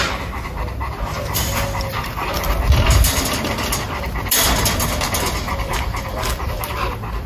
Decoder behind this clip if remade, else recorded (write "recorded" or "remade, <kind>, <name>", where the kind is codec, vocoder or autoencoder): recorded